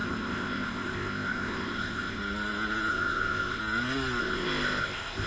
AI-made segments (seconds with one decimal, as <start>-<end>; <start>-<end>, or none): 0.0-2.2; 2.9-3.6; 4.2-5.3